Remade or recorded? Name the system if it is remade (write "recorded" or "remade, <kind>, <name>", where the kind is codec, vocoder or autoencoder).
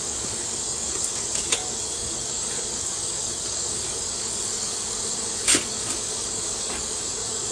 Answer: remade, codec, DAC